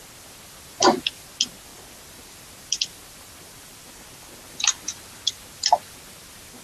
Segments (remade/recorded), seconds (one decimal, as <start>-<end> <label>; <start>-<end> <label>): 0.0-6.6 recorded